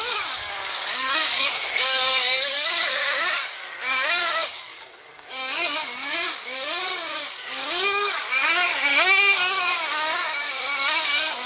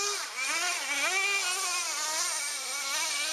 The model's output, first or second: first